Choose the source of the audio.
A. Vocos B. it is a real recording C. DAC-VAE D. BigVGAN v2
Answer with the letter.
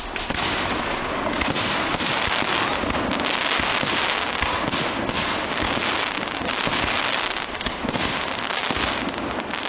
B